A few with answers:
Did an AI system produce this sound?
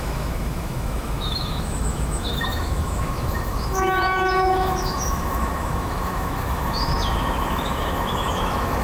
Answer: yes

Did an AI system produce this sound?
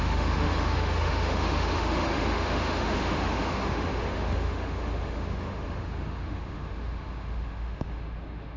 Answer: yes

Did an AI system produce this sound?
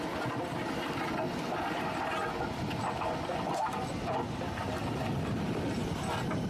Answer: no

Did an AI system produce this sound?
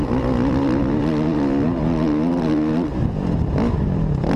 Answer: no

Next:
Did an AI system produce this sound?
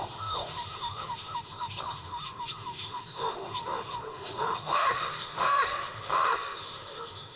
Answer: yes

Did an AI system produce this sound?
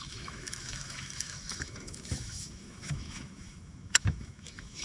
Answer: yes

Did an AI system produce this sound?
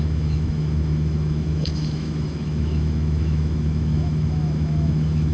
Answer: yes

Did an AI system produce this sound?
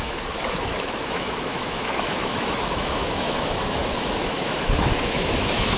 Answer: yes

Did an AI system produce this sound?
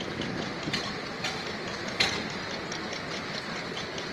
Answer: no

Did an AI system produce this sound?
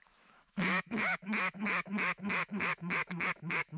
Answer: yes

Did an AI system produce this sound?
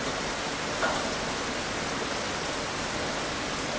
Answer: no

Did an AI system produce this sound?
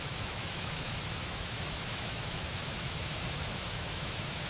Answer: yes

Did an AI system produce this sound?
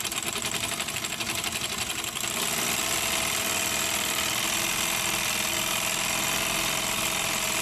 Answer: no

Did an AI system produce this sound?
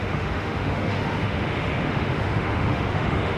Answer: yes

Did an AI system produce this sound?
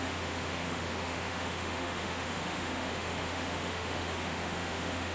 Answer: yes